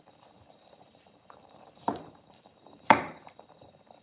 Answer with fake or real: fake